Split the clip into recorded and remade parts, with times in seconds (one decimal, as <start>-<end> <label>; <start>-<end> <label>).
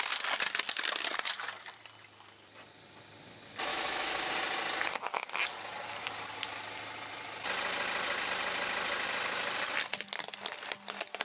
0.0-3.7 recorded; 3.7-4.3 remade; 4.3-11.2 recorded